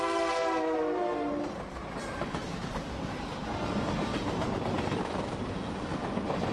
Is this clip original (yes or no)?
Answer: no